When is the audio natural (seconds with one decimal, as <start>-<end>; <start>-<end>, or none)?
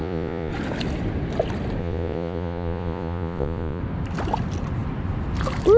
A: 0.5-1.8; 3.8-5.8